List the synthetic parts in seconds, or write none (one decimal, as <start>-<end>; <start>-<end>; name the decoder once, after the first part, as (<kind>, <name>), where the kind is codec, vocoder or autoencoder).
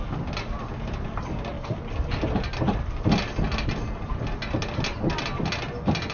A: none